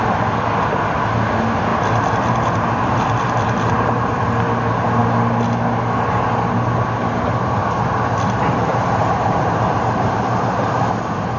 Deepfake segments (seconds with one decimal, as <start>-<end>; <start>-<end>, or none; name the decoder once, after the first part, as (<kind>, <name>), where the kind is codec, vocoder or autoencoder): 1.7-4.2 (vocoder, BigVGAN v2); 8.7-11.0